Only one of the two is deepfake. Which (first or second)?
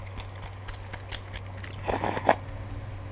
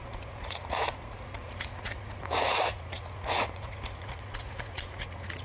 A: second